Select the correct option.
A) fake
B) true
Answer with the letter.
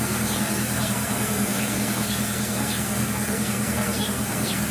A